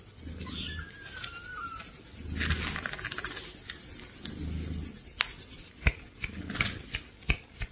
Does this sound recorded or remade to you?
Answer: recorded